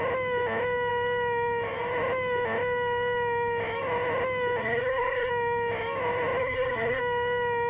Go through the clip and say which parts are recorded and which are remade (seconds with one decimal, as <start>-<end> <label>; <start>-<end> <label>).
0.0-4.6 recorded; 4.6-5.3 remade; 5.3-6.4 recorded; 6.4-7.0 remade; 7.0-7.7 recorded